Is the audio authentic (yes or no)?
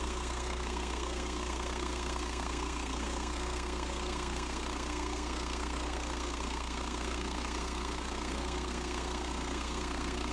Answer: no